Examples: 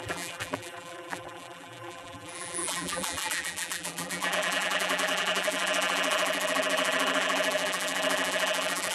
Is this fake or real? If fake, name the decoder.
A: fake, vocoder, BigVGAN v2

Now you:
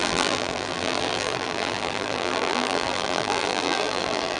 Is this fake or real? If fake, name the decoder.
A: fake, vocoder, BigVGAN v2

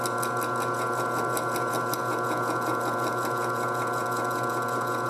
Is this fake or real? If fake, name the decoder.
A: real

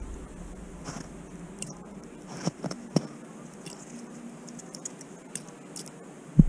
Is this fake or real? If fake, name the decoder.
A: real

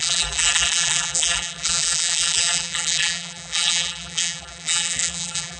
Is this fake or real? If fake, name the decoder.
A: fake, vocoder, BigVGAN v2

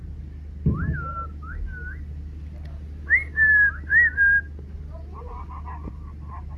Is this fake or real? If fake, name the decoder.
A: real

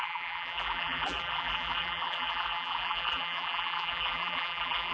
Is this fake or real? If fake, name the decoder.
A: fake, vocoder, BigVGAN v2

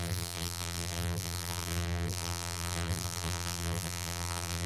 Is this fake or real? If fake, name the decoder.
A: fake, vocoder, BigVGAN v2